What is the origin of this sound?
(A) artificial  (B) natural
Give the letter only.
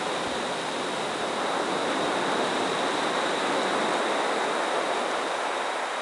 B